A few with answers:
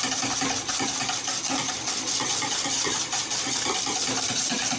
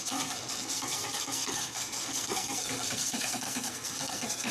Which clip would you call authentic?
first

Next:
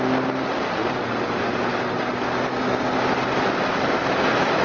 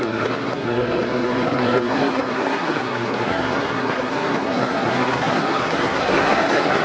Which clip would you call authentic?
first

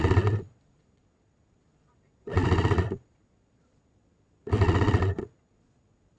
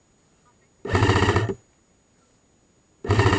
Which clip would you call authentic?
second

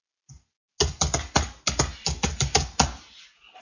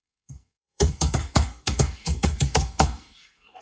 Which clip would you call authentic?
first